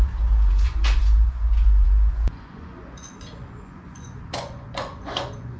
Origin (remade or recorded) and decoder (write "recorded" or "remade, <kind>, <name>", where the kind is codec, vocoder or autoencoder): remade, vocoder, Vocos